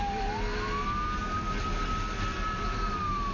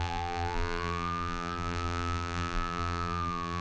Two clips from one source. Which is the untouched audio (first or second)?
first